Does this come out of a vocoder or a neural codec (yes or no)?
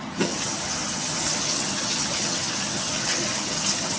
yes